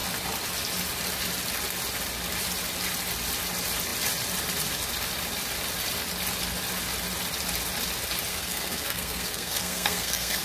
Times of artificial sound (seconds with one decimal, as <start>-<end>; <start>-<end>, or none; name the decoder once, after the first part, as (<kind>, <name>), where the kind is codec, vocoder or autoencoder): 8.3-10.4 (codec, SNAC)